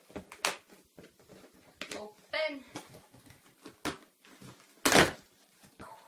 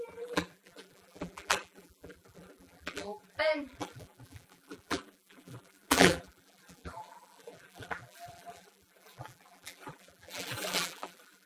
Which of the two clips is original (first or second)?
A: first